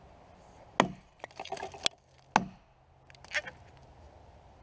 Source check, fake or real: real